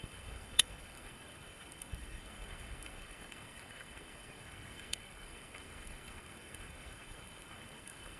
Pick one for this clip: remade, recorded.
remade